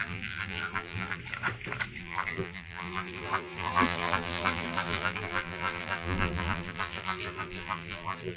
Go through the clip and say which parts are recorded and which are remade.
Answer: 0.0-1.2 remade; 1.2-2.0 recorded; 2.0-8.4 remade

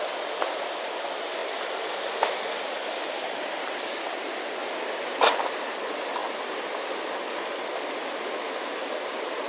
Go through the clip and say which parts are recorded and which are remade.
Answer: 0.0-4.6 recorded; 4.6-5.6 remade; 5.6-6.2 recorded; 6.2-7.0 remade; 7.0-9.5 recorded

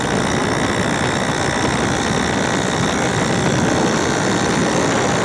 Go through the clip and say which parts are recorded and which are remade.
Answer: 0.0-5.2 recorded

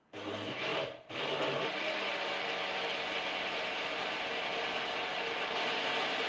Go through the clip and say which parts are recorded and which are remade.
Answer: 0.0-6.3 recorded

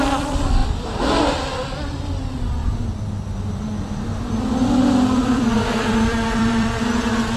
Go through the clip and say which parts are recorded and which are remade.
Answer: 0.0-0.6 recorded; 0.6-1.2 remade; 1.2-5.2 recorded; 5.2-7.4 remade

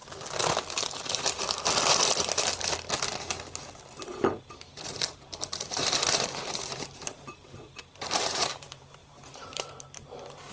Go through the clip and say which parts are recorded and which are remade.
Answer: 0.0-4.4 recorded; 4.4-10.5 remade

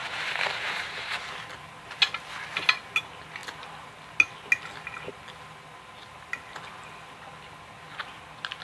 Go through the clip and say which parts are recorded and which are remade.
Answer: 0.0-1.3 remade; 1.3-8.6 recorded